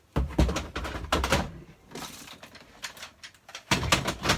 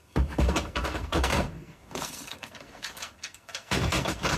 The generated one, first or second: second